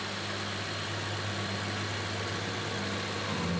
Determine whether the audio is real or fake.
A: real